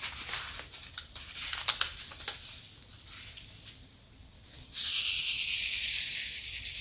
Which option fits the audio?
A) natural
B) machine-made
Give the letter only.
A